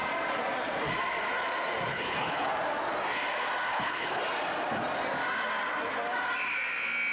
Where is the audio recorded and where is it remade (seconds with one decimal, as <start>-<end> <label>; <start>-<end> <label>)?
0.0-1.9 recorded; 1.9-2.5 remade; 2.5-3.7 recorded; 3.7-4.2 remade; 4.2-7.1 recorded